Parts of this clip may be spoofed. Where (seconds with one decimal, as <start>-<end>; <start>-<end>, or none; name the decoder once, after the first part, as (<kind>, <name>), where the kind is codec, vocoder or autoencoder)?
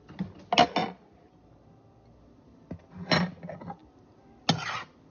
none